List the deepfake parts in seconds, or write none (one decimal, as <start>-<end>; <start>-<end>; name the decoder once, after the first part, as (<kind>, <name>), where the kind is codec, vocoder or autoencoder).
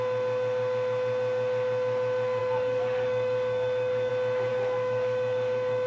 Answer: 2.4-4.1 (codec, DAC); 4.5-5.9